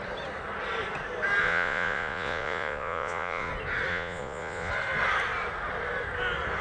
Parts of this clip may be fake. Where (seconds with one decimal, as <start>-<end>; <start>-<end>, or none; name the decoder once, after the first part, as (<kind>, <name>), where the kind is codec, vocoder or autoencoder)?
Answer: 1.4-3.5 (vocoder, Vocos); 3.9-4.7